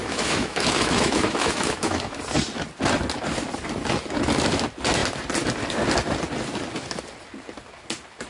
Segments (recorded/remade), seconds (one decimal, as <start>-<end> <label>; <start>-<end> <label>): 0.0-2.2 remade; 2.2-8.3 recorded